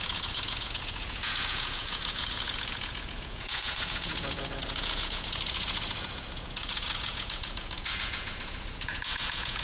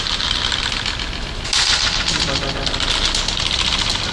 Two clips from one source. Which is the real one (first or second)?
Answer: second